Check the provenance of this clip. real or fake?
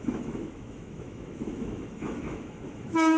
fake